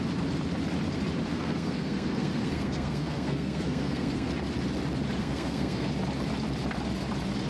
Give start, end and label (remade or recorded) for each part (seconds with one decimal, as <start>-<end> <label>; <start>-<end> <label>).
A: 0.0-1.3 recorded; 1.3-4.3 remade; 4.3-5.2 recorded; 5.2-5.9 remade; 5.9-7.5 recorded